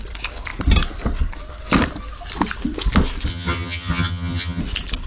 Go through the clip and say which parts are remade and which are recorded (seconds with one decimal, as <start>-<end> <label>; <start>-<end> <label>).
0.0-3.3 recorded; 3.3-4.6 remade; 4.6-5.1 recorded